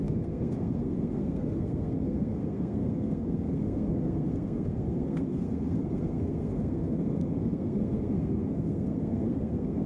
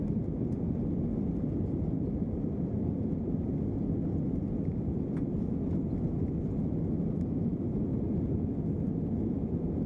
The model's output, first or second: first